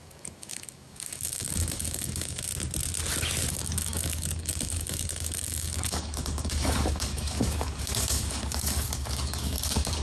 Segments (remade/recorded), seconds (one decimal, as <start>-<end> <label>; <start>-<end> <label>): 0.0-2.5 remade; 2.5-3.5 recorded; 3.5-10.0 remade